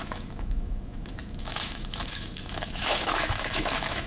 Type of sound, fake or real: fake